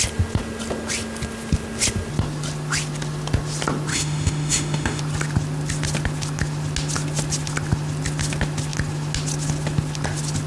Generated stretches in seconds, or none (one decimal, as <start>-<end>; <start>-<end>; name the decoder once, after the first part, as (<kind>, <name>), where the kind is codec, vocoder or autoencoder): 3.9-5.0 (autoencoder, DAC-VAE)